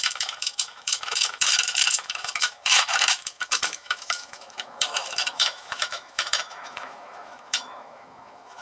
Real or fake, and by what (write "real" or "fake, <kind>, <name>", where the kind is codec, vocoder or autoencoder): fake, autoencoder, DAC-VAE